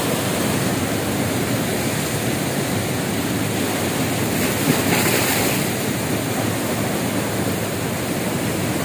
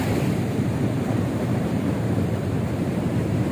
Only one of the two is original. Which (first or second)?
first